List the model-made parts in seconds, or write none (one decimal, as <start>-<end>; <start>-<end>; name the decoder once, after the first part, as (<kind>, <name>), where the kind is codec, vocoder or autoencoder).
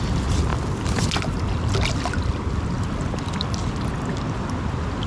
none